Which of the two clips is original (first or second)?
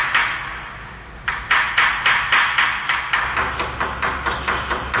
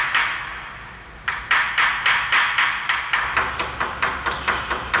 first